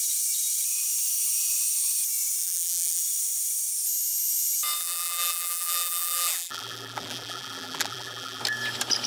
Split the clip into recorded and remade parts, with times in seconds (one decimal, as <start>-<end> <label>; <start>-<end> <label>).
0.0-2.4 recorded; 2.4-3.0 remade; 3.0-4.8 recorded; 4.8-8.4 remade; 8.4-9.1 recorded